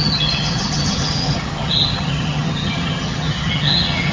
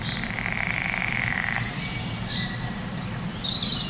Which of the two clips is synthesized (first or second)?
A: first